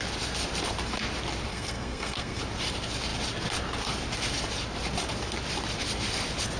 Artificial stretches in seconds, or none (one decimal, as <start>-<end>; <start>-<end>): 1.5-2.4